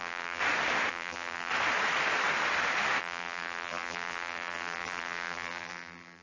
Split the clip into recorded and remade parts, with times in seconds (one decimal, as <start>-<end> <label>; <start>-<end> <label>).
0.0-0.4 remade; 0.4-0.9 recorded; 0.9-1.5 remade; 1.5-3.0 recorded; 3.0-6.2 remade